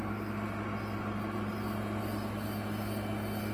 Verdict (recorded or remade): recorded